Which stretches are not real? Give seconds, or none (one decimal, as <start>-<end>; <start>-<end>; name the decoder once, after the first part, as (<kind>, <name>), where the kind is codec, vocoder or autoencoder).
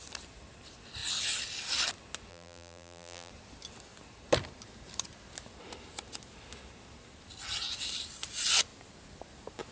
2.3-3.3 (vocoder, BigVGAN v2)